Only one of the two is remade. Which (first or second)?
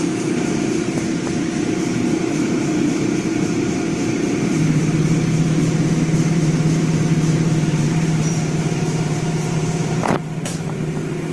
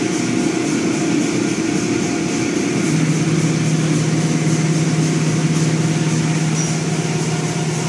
first